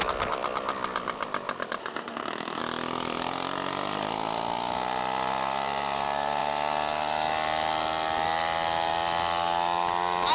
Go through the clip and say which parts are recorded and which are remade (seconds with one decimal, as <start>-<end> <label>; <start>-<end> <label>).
0.0-1.8 recorded; 1.8-2.6 remade; 2.6-10.3 recorded